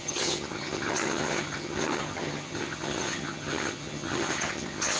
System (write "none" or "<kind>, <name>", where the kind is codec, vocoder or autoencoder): vocoder, HiFi-GAN